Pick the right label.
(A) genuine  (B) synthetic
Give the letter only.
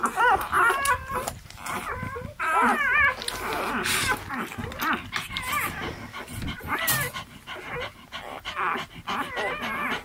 A